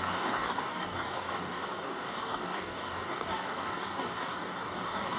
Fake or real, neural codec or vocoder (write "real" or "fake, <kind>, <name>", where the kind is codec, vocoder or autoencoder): fake, codec, DAC